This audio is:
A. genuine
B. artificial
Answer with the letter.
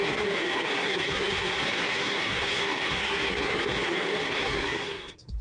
B